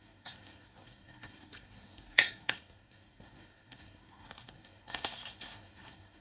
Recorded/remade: remade